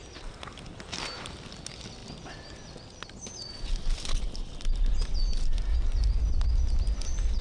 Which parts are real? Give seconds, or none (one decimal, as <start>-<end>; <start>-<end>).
0.0-7.4